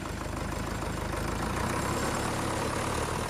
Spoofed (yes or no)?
no